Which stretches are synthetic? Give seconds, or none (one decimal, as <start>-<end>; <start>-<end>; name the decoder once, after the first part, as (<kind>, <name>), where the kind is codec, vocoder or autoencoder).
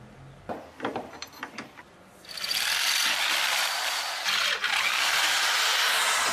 0.9-4.7 (vocoder, BigVGAN v2)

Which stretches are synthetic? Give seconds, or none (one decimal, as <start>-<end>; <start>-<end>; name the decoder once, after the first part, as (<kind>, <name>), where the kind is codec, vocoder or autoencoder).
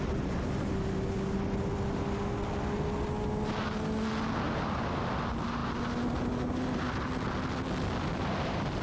none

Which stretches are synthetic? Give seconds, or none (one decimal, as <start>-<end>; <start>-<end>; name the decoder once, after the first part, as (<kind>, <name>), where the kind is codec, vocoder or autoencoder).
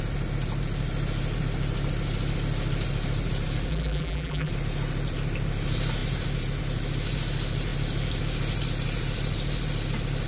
3.7-4.5 (vocoder, BigVGAN v2)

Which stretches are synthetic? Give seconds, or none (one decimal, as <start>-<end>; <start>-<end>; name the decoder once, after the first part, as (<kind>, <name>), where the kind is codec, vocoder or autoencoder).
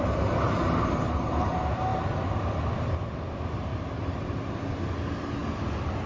3.7-4.4 (vocoder, BigVGAN v2)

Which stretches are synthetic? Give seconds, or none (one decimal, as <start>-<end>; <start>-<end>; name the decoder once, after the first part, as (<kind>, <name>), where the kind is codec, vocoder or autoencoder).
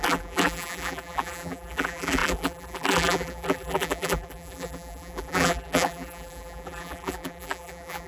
0.0-8.1 (vocoder, BigVGAN v2)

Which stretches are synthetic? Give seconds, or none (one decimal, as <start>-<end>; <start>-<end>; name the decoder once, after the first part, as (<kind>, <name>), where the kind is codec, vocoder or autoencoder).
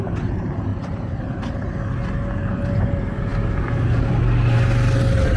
0.7-1.2 (vocoder, BigVGAN v2)